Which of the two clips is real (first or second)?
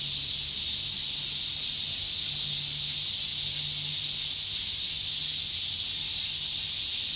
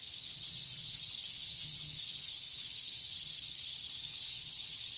first